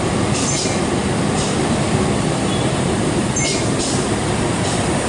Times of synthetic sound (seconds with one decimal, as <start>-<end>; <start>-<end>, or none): 0.0-5.1